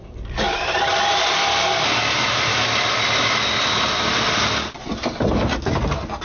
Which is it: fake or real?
real